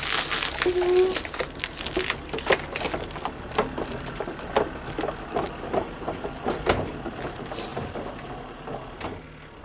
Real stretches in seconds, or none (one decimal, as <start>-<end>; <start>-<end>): 0.0-9.6